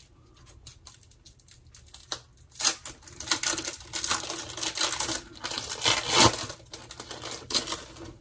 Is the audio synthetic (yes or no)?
no